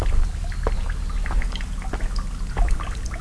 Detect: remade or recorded recorded